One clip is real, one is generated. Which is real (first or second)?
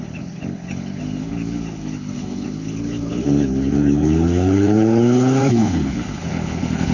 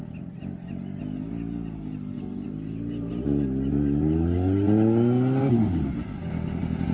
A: second